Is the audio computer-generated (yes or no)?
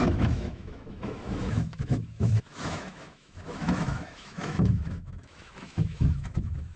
yes